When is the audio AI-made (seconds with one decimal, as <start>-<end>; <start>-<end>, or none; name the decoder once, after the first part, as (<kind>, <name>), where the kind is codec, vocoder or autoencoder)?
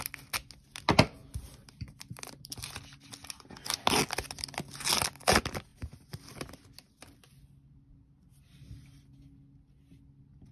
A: 1.2-2.7 (vocoder, BigVGAN v2); 5.7-6.2